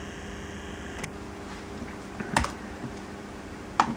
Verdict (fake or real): real